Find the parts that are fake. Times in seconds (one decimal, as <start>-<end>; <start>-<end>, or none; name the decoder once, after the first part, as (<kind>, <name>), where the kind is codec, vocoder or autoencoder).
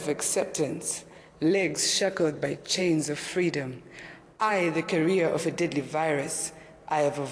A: 1.0-2.8 (codec, HILCodec)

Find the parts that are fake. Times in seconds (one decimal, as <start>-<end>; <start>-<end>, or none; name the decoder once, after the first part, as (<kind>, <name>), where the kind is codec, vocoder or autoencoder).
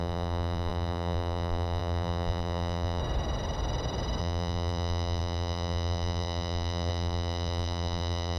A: 0.0-3.0 (vocoder, BigVGAN v2); 4.2-8.4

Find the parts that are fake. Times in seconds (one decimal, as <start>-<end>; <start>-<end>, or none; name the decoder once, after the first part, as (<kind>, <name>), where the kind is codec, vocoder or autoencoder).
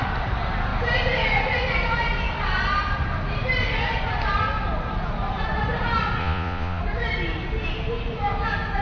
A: 6.2-6.8 (vocoder, Vocos)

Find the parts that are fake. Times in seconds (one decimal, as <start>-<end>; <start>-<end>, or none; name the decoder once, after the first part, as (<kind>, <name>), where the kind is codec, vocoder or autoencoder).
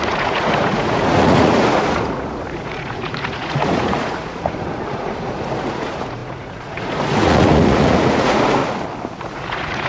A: 0.0-8.6 (vocoder, Vocos); 9.2-9.9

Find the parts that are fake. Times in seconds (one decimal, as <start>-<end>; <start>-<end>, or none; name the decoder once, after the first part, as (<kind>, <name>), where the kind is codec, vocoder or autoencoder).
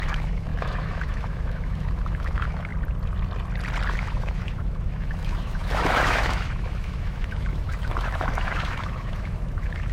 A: 0.0-2.7 (autoencoder, DAC-VAE); 3.9-9.9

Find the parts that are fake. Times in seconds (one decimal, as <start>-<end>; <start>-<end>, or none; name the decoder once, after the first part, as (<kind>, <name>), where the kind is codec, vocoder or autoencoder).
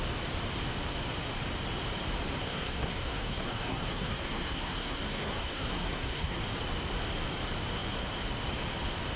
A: 2.4-6.4 (codec, SNAC)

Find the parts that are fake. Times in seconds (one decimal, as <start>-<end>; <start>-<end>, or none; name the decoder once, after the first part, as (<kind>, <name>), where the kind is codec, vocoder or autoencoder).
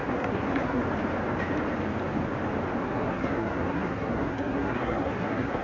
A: 0.0-0.8 (codec, SNAC); 2.8-5.6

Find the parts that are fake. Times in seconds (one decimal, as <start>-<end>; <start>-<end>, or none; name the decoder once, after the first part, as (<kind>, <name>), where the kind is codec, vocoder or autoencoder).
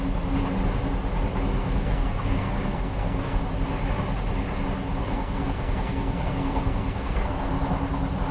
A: 1.6-3.4 (codec, SNAC); 5.0-7.5